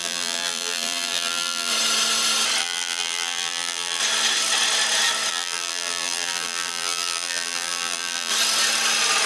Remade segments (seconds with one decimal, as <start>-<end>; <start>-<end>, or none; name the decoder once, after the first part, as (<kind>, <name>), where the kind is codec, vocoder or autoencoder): 0.0-1.7 (vocoder, BigVGAN v2); 2.6-4.0; 5.3-8.3